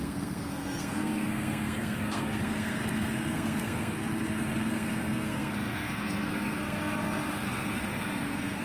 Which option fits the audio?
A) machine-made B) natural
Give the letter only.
A